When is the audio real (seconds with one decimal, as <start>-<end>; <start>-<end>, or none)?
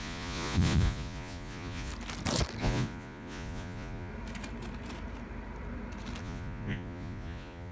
1.9-2.6; 4.1-6.2